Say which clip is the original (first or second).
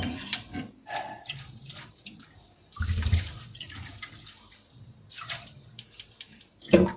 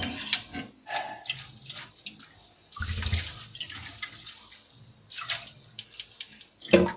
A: second